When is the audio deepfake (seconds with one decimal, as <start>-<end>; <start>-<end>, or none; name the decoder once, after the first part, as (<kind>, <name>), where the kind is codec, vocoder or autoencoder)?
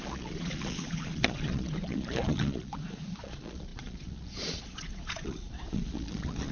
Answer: 0.0-6.5 (vocoder, Vocos)